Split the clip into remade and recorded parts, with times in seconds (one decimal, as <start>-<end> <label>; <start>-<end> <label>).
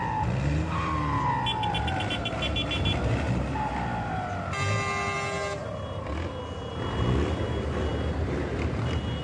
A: 0.0-9.2 recorded